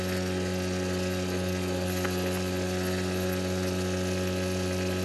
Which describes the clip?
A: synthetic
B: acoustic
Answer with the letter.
B